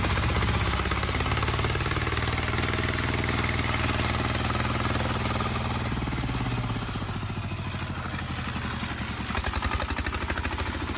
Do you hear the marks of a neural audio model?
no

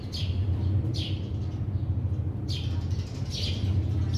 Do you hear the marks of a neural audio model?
no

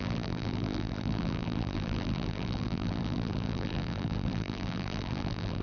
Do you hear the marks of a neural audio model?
yes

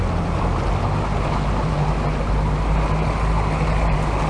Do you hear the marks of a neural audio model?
no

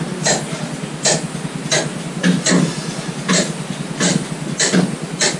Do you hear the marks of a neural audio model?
no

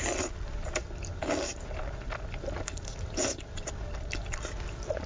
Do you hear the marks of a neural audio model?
no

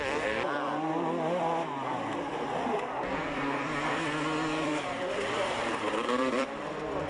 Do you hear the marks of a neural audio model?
yes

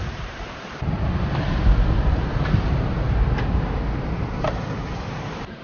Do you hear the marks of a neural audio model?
yes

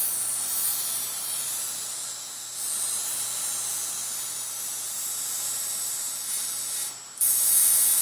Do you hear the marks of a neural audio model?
yes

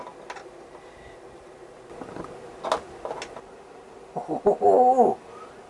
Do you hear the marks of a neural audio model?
no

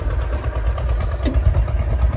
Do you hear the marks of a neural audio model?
no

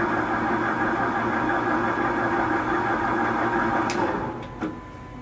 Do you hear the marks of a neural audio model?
no